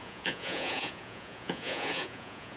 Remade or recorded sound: remade